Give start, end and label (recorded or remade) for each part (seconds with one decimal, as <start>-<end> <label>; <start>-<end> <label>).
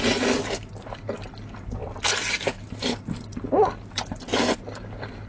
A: 0.0-5.3 recorded